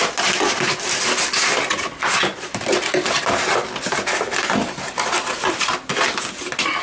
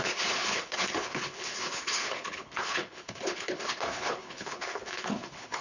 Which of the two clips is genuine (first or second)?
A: first